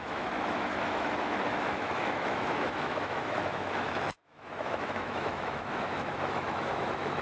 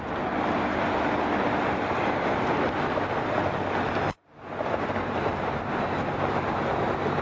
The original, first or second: second